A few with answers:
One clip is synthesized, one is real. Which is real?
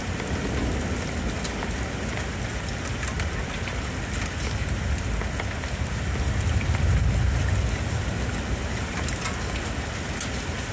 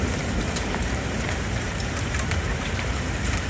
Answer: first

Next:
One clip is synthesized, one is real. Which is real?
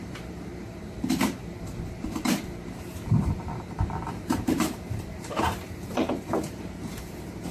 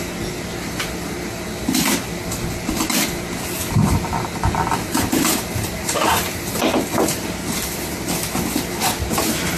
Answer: second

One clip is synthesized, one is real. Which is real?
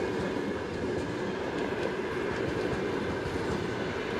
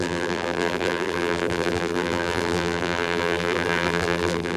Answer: first